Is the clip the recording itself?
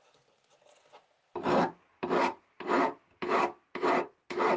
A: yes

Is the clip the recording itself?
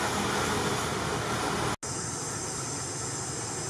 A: yes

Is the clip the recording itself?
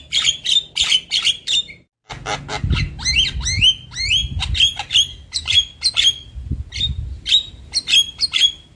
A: yes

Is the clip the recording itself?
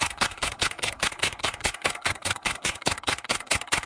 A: no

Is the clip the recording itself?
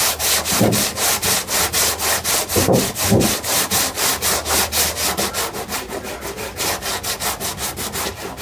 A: yes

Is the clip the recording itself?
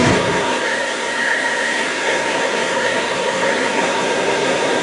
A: no